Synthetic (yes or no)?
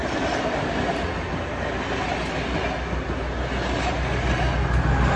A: no